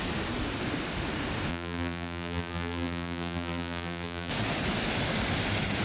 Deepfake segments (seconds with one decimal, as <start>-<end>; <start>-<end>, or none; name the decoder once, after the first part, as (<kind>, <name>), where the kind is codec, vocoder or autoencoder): 1.5-4.3 (vocoder, BigVGAN v2)